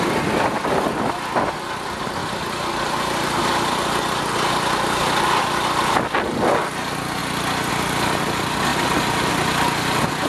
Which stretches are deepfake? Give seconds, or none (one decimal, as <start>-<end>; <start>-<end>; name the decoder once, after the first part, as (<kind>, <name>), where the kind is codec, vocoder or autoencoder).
8.7-9.3 (vocoder, BigVGAN v2)